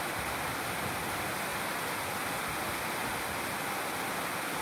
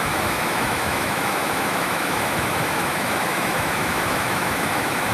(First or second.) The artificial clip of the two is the second